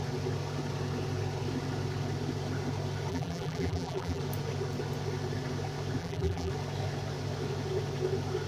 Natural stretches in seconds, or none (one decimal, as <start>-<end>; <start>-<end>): 0.0-3.1; 4.2-6.0; 6.5-8.5